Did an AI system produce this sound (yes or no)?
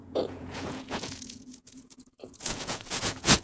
yes